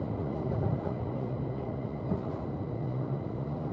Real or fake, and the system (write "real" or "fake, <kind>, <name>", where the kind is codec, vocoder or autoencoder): fake, vocoder, Vocos